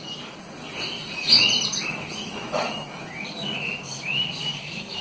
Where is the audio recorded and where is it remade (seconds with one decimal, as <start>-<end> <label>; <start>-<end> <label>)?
0.0-1.7 recorded; 1.7-5.0 remade